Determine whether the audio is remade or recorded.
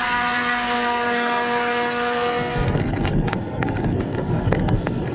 remade